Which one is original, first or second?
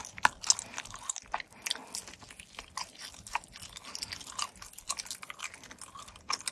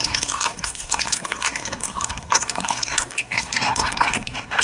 first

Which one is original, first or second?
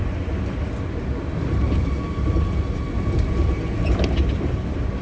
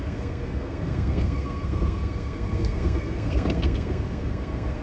first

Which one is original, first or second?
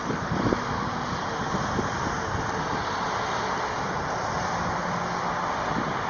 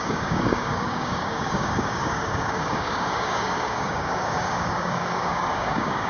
first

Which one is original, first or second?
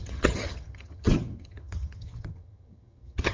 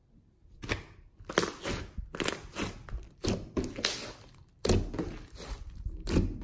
second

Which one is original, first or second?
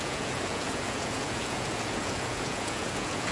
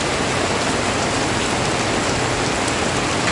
second